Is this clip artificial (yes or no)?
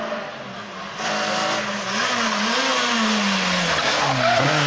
no